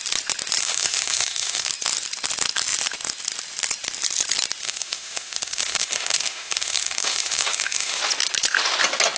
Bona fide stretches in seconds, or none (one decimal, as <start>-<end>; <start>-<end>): 0.0-0.6; 1.7-4.6; 8.0-9.2